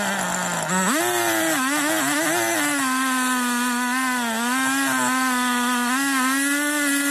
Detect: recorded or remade recorded